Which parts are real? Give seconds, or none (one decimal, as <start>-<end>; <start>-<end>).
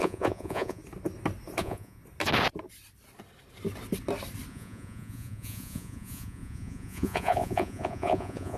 0.8-1.6; 2.0-4.5